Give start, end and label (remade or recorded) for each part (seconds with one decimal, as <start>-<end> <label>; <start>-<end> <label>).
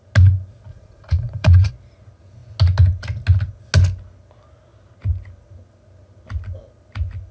0.0-0.7 recorded; 0.7-1.7 remade; 1.7-7.3 recorded